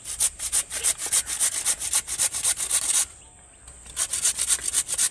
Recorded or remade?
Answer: recorded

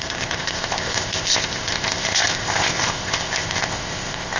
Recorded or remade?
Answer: remade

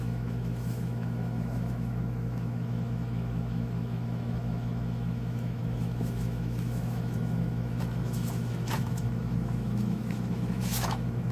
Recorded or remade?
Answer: remade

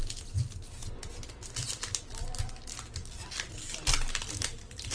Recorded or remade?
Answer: recorded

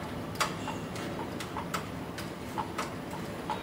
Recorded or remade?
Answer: recorded